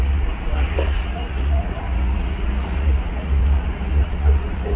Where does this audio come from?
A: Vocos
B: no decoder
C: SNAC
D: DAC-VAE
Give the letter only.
A